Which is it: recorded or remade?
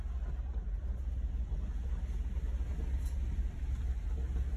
recorded